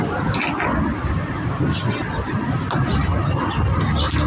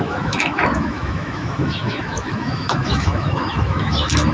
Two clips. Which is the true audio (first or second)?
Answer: first